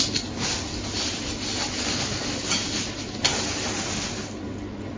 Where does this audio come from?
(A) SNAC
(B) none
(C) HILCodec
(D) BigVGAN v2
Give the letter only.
B